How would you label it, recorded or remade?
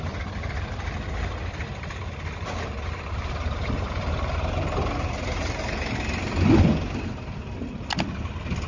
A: recorded